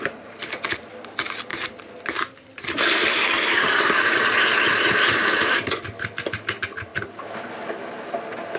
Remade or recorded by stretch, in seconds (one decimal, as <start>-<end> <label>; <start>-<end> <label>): 0.0-1.5 recorded; 1.5-5.8 remade; 5.8-8.6 recorded